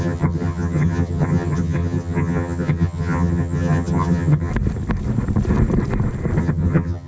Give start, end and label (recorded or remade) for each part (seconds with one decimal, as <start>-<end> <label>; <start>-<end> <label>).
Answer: 0.0-4.5 remade; 4.5-6.4 recorded; 6.4-7.1 remade